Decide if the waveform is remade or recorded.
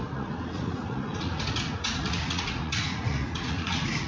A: remade